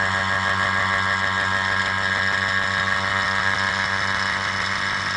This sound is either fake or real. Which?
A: real